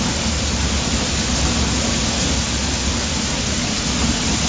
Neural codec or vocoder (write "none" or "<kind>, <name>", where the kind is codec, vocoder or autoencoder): none